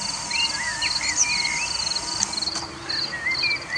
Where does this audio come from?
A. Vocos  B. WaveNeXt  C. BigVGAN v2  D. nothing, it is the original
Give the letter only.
D